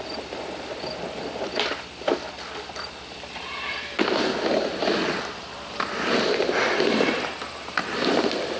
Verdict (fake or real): fake